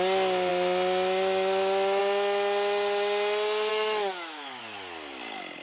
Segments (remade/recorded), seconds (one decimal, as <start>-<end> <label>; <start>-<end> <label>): 0.0-3.7 recorded; 3.7-4.6 remade; 4.6-5.6 recorded